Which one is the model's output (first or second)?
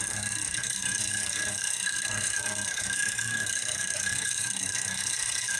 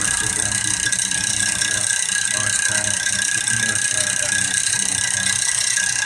first